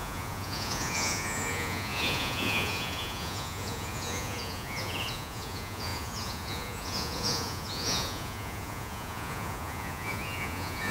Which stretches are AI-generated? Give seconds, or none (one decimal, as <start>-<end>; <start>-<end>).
0.0-10.9